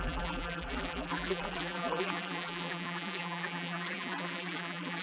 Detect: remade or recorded remade